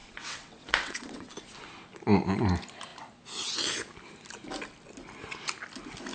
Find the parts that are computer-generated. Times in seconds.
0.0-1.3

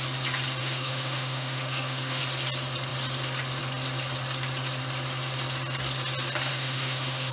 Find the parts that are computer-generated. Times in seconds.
0.6-2.2; 6.5-7.3

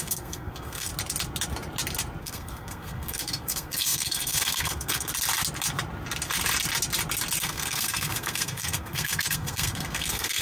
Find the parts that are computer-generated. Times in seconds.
0.0-0.9; 2.2-5.1; 7.4-10.4